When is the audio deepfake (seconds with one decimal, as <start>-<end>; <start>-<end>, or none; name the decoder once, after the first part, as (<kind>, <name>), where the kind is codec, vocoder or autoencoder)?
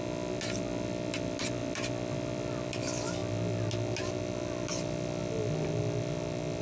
none